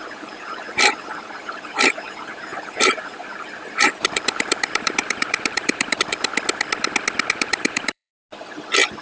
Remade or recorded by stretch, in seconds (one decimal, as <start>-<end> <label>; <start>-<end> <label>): 0.0-6.3 remade; 6.3-7.3 recorded; 7.3-8.1 remade; 8.1-9.0 recorded

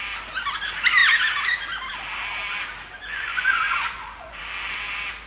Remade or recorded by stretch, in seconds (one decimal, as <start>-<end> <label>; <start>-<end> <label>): 0.0-3.0 recorded; 3.0-4.4 remade; 4.4-5.3 recorded

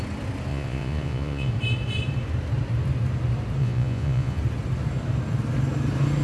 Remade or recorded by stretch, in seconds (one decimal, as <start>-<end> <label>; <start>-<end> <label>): 0.0-0.5 recorded; 0.5-1.5 remade; 1.5-3.6 recorded; 3.6-4.4 remade; 4.4-6.2 recorded

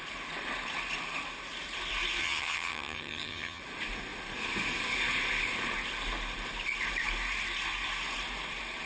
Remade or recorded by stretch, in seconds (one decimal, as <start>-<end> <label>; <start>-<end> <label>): 0.0-2.2 recorded; 2.2-3.6 remade; 3.6-8.9 recorded

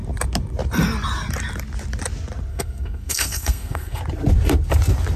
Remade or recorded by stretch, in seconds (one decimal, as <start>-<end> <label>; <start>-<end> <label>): 0.0-2.5 recorded; 2.5-4.0 remade; 4.0-5.2 recorded

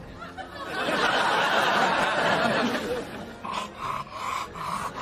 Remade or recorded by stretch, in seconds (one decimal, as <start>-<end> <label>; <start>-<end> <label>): 0.0-5.0 recorded